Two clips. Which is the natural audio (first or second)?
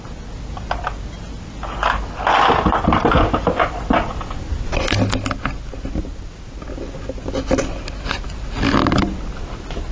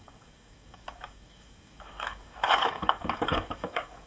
first